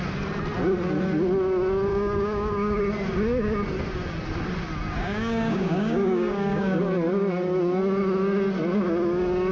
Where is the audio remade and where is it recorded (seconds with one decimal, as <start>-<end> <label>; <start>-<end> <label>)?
0.0-1.9 recorded; 1.9-2.8 remade; 2.8-5.0 recorded; 5.0-6.8 remade; 6.8-9.5 recorded